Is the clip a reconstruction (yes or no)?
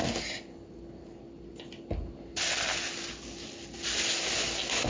no